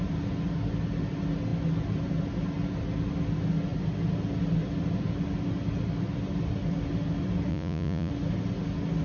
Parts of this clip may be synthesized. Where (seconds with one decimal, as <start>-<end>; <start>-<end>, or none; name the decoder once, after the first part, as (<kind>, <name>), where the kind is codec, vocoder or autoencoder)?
7.5-8.1 (vocoder, Vocos)